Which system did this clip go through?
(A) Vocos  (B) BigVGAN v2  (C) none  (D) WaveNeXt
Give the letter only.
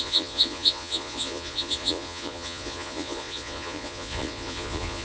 A